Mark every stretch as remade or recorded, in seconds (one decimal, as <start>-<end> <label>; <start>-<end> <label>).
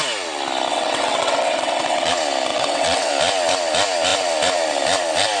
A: 0.0-0.7 recorded; 0.7-2.1 remade; 2.1-2.5 recorded; 2.5-3.1 remade; 3.1-5.4 recorded